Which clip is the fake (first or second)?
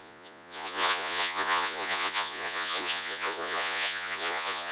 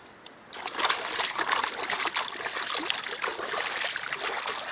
first